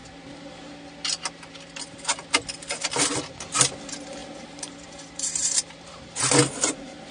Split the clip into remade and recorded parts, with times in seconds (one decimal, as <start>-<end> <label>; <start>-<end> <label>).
0.0-4.2 recorded; 4.2-6.3 remade; 6.3-7.1 recorded